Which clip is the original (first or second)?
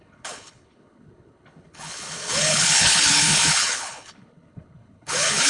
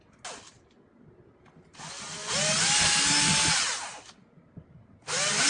second